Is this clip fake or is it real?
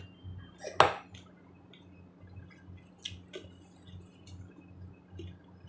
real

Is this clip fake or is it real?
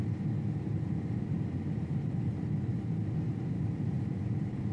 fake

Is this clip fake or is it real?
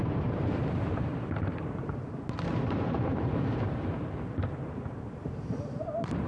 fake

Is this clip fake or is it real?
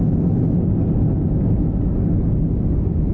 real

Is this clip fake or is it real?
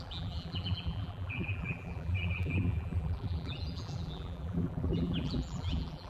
fake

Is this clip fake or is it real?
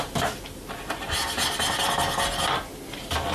real